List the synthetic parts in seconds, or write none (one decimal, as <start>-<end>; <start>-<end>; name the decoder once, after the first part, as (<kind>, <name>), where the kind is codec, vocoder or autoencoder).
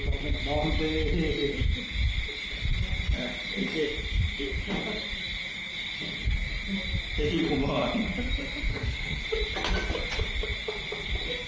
8.7-9.2 (codec, SNAC)